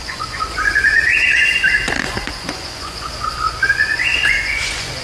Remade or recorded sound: remade